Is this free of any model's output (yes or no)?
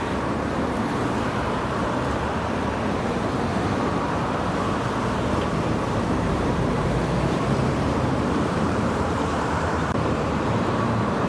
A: no